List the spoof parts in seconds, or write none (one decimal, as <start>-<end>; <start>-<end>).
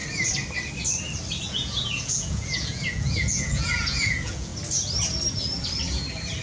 1.4-4.5